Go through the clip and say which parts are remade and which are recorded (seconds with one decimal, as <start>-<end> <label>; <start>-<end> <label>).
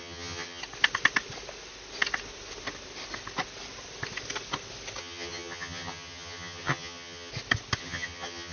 0.0-0.6 remade; 0.6-5.0 recorded; 5.0-7.3 remade; 7.3-7.8 recorded; 7.8-8.5 remade